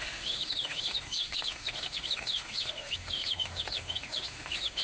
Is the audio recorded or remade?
remade